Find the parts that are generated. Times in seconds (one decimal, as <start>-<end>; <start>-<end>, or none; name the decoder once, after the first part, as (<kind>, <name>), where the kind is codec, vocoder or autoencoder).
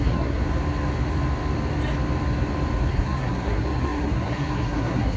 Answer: 0.0-0.4 (codec, SNAC); 2.9-5.2